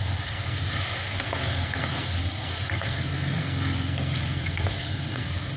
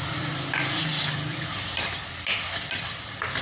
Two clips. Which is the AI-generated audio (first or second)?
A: first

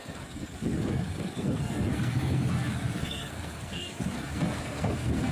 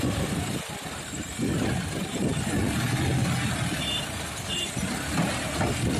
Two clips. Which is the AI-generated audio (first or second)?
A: first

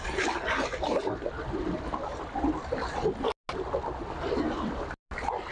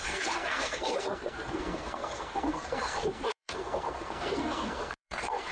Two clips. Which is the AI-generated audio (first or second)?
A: second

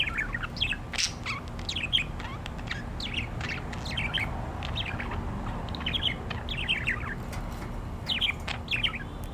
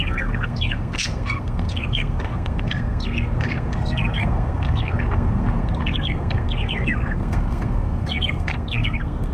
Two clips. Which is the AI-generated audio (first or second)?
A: second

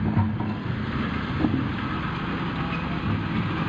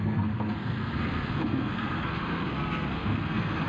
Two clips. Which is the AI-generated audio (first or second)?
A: second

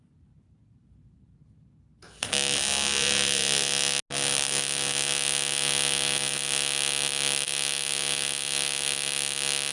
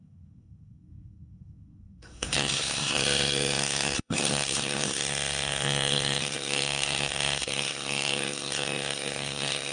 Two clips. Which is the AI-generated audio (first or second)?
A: second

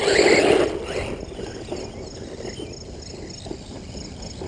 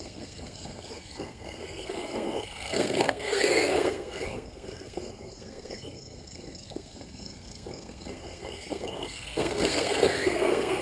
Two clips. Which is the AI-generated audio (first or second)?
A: second